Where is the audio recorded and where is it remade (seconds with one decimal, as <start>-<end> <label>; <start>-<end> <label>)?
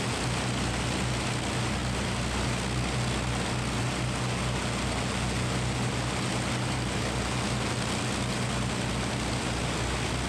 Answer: 0.0-10.3 recorded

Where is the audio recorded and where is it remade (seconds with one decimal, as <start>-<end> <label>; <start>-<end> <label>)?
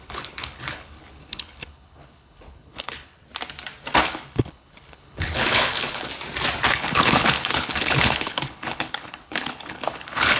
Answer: 0.0-3.2 remade; 3.2-4.0 recorded; 4.0-6.1 remade; 6.1-6.7 recorded; 6.7-10.4 remade